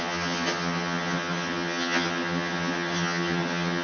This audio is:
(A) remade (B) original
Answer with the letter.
A